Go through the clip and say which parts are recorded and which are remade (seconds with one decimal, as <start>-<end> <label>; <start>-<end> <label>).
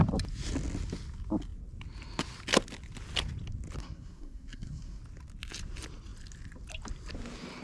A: 0.0-3.8 recorded; 3.8-5.0 remade; 5.0-7.6 recorded